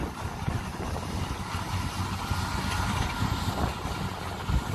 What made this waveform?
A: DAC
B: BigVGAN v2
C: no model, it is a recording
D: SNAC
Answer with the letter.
C